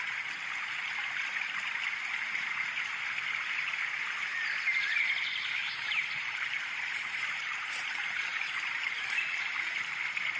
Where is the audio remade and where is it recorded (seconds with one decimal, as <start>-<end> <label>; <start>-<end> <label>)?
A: 0.0-5.6 recorded; 5.6-8.9 remade; 8.9-10.4 recorded